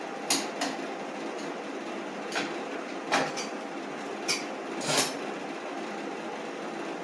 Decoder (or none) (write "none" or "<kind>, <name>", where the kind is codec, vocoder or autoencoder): none